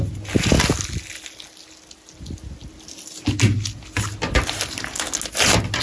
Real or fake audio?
real